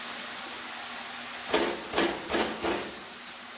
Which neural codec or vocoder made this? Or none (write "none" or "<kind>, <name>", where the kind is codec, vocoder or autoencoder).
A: none